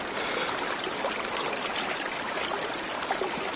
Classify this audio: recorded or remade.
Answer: recorded